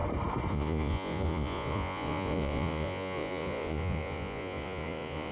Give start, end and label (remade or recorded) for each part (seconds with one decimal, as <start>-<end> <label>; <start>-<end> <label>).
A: 0.0-0.5 recorded; 0.5-5.3 remade